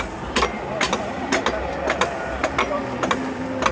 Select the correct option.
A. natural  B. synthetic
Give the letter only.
A